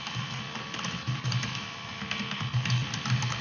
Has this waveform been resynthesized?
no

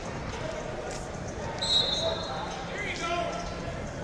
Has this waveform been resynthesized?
no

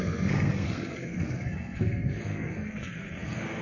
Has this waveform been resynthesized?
yes